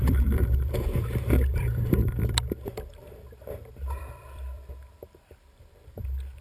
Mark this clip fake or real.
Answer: fake